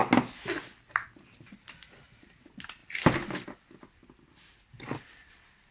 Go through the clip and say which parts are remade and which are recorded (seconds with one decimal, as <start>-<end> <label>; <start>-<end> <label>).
0.0-5.7 recorded